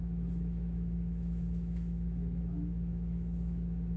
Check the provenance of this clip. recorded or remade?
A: remade